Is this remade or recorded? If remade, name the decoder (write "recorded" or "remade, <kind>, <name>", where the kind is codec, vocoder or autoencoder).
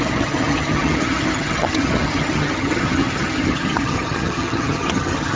remade, vocoder, HiFi-GAN